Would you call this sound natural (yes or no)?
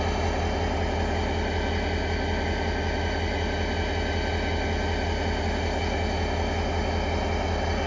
yes